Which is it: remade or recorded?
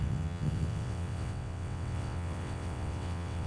remade